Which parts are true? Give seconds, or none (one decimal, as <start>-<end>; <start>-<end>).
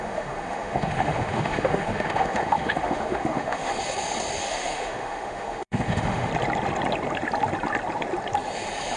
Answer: 3.7-4.4; 6.3-9.0